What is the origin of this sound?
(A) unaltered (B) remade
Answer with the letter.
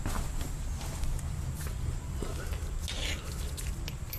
A